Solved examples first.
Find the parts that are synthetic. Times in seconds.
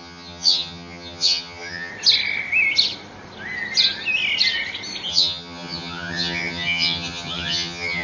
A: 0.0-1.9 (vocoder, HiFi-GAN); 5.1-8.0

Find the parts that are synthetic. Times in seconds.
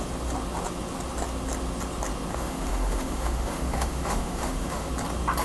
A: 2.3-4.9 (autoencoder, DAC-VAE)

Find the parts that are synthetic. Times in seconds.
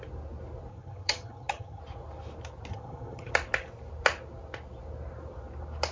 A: 0.7-1.8 (vocoder, HiFi-GAN); 2.7-3.3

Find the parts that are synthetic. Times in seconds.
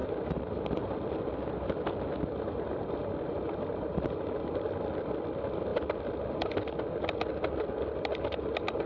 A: none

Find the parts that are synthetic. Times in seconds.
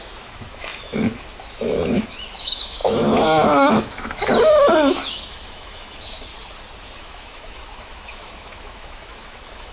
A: 0.0-4.3 (autoencoder, DAC-VAE); 4.9-6.3; 6.8-9.7